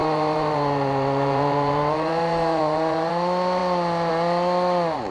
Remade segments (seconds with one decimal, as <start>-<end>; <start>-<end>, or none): 0.0-3.1